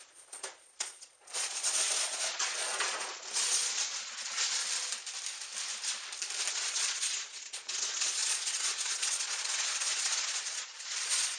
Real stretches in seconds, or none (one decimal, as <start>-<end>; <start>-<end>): 4.6-6.5